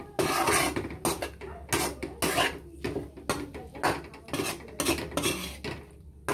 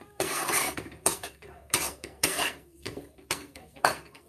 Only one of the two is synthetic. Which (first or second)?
second